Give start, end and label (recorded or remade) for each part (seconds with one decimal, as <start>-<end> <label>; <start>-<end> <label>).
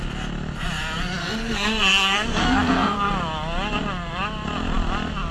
0.0-1.2 recorded; 1.2-3.1 remade; 3.1-5.3 recorded